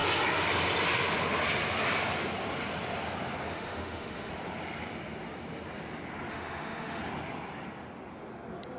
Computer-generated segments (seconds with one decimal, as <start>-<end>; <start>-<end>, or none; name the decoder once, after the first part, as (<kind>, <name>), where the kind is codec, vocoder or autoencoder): 3.5-4.3 (autoencoder, DAC-VAE); 6.3-7.0